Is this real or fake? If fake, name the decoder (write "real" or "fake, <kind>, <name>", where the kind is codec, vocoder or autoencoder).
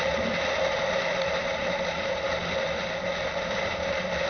real